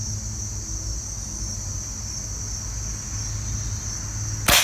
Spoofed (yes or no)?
no